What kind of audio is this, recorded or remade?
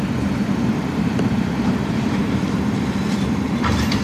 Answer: remade